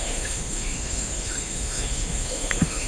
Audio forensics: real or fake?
fake